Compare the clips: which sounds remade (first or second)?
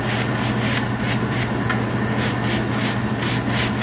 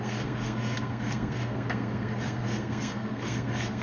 second